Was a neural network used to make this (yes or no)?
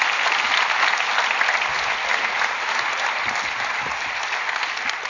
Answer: no